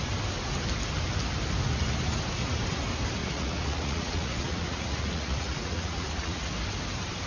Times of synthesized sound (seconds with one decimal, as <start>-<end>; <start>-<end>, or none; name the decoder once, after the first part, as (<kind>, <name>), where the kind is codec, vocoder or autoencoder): 3.2-6.5 (vocoder, Vocos)